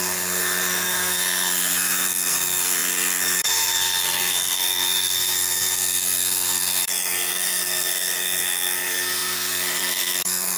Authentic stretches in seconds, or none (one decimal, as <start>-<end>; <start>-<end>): none